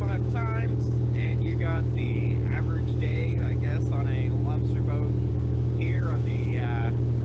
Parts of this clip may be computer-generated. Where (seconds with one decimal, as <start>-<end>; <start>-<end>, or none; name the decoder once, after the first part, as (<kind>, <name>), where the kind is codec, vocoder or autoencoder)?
0.0-3.7 (codec, DAC); 5.3-7.2